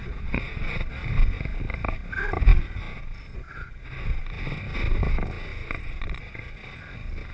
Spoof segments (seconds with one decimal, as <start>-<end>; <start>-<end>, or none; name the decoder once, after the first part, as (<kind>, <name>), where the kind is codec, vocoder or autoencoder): 0.0-1.0 (vocoder, Vocos); 2.9-4.2; 5.6-6.7